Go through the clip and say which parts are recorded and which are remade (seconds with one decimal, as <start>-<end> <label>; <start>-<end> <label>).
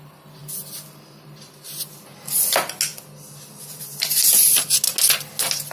0.0-5.7 recorded